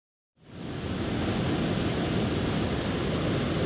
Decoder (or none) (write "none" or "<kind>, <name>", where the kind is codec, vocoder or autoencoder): none